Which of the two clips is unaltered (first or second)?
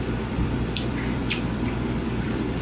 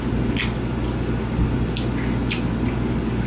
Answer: second